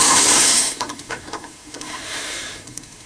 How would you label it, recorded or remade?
remade